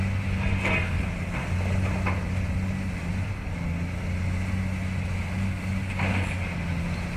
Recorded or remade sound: recorded